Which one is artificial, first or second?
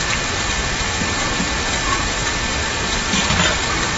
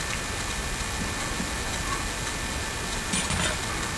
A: first